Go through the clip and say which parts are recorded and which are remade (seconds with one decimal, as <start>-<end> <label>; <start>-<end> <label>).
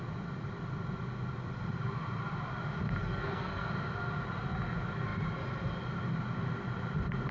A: 0.0-3.0 recorded; 3.0-3.7 remade; 3.7-7.3 recorded